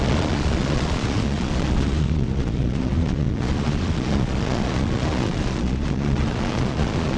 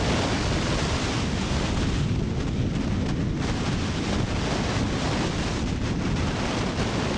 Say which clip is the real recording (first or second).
second